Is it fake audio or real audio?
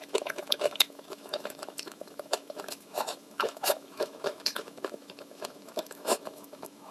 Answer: fake